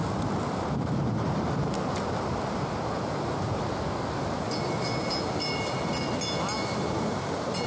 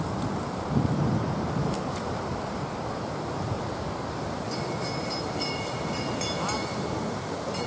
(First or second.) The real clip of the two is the first